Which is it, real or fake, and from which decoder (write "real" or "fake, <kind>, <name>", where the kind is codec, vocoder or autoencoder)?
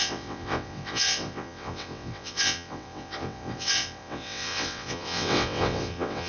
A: fake, vocoder, WaveNeXt